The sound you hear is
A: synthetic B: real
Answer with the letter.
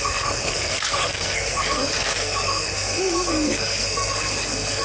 A